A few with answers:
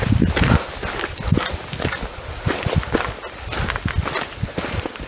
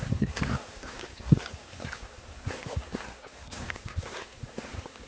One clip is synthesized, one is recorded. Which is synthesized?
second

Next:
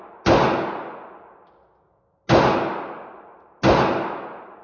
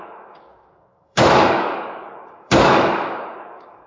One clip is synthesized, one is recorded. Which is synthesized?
second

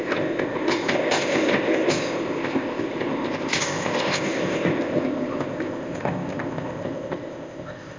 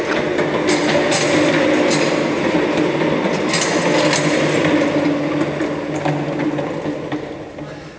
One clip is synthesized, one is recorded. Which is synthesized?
first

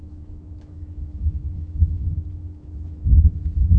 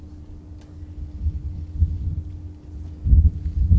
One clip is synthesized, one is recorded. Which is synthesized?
first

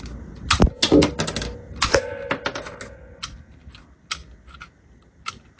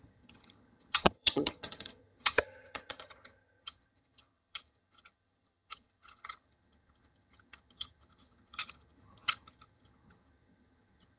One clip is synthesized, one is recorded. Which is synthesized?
second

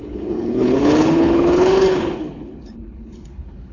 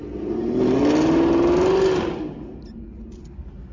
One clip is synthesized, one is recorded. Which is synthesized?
first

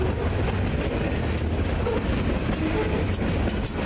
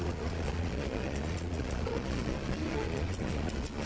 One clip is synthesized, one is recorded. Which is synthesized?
second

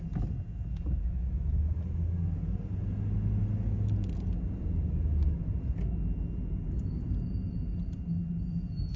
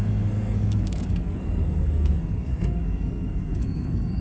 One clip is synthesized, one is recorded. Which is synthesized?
second